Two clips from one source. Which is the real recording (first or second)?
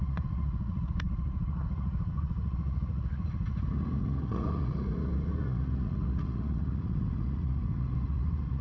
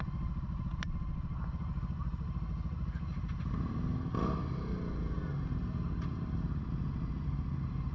second